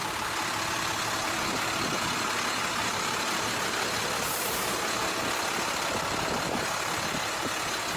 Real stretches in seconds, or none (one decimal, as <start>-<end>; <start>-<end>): 0.0-8.0